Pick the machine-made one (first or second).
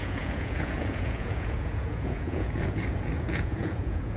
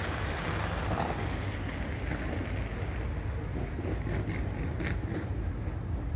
first